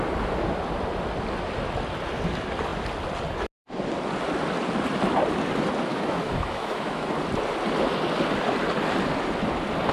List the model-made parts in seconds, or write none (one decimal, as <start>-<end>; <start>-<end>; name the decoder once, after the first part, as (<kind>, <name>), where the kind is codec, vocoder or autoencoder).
5.9-7.1 (autoencoder, DAC-VAE)